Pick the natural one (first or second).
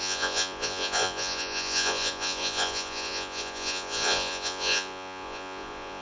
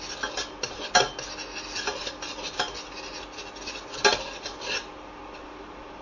second